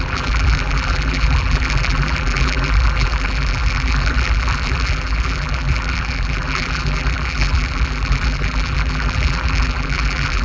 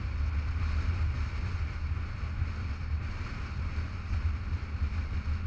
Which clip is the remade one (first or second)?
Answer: first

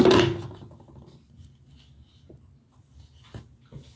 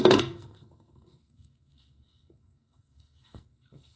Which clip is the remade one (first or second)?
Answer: second